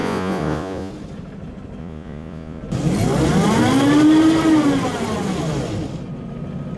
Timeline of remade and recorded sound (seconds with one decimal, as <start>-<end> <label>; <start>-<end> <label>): 0.0-0.9 remade; 0.9-1.8 recorded; 1.8-2.6 remade; 2.6-6.8 recorded